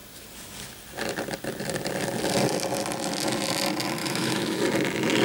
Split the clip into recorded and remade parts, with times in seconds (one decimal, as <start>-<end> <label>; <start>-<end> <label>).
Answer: 0.0-4.0 recorded; 4.0-4.6 remade; 4.6-5.2 recorded